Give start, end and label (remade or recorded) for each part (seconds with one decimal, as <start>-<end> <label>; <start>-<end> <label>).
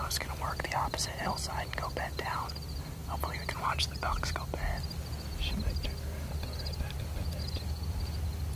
0.0-8.6 recorded